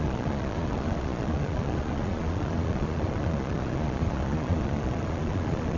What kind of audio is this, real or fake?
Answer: fake